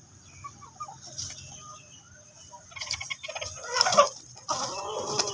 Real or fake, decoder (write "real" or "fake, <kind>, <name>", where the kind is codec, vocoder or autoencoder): fake, vocoder, BigVGAN v2